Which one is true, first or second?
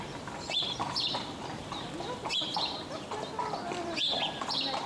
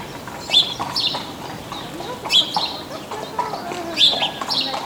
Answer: second